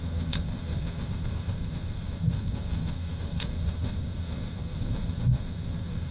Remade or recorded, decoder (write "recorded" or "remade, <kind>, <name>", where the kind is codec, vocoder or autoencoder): remade, codec, SNAC